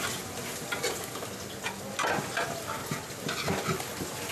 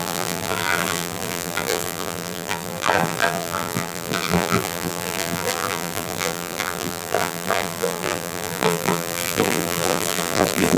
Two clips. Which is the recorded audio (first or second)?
first